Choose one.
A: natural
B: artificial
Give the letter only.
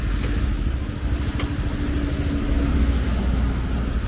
A